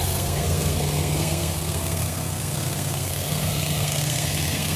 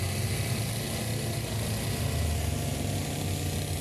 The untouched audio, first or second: second